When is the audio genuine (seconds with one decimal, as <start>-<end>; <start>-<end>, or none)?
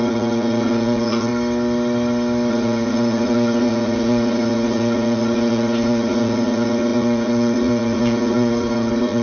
1.3-2.5